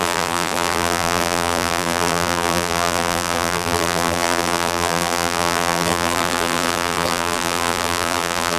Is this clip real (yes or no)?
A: no